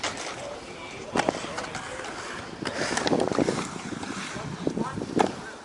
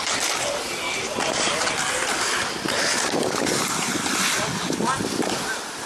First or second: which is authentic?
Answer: second